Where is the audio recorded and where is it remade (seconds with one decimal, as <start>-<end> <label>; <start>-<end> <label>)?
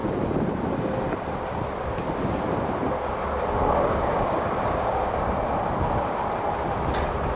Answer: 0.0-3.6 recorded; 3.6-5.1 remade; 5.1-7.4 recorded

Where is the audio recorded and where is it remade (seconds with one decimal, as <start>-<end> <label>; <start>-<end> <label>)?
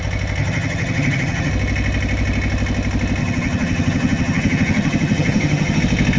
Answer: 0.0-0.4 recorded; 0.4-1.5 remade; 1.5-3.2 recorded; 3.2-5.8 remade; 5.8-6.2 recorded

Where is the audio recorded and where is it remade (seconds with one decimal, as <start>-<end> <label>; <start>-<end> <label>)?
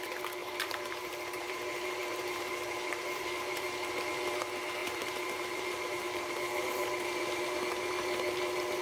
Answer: 0.0-0.4 recorded; 0.4-3.9 remade; 3.9-4.8 recorded; 4.8-7.4 remade; 7.4-8.8 recorded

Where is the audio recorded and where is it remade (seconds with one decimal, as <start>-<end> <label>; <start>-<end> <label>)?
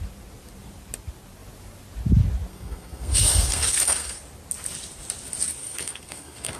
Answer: 0.0-2.5 recorded; 2.5-4.2 remade; 4.2-5.6 recorded; 5.6-6.6 remade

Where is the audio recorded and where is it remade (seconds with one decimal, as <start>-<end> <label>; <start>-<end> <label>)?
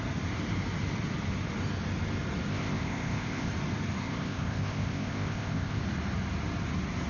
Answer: 0.0-2.5 recorded; 2.5-3.5 remade; 3.5-4.0 recorded; 4.0-5.8 remade; 5.8-7.1 recorded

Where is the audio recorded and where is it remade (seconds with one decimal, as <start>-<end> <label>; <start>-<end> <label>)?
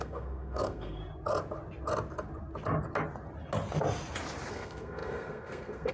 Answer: 0.0-1.0 remade; 1.0-4.5 recorded; 4.5-5.9 remade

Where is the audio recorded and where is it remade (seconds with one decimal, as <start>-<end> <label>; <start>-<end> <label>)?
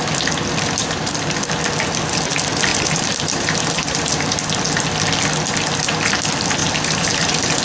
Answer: 0.0-0.8 recorded; 0.8-1.4 remade; 1.4-2.7 recorded; 2.7-4.1 remade; 4.1-6.6 recorded; 6.6-7.6 remade